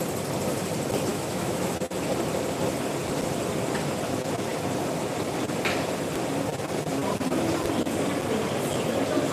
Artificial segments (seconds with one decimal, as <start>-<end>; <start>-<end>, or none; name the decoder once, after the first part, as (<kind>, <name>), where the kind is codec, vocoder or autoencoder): 1.1-1.7 (autoencoder, DAC-VAE)